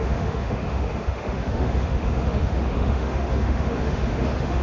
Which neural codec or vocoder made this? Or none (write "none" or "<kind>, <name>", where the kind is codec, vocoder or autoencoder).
autoencoder, DAC-VAE